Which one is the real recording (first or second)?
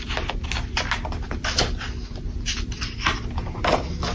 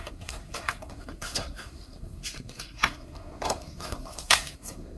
first